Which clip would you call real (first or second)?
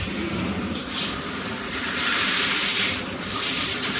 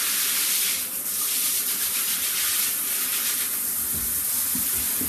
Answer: second